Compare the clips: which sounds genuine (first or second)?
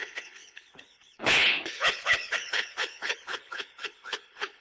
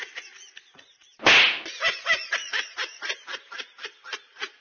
second